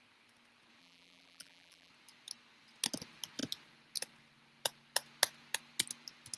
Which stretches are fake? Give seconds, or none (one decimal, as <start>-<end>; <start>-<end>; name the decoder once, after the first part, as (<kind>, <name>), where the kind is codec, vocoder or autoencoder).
0.8-1.9 (vocoder, BigVGAN v2)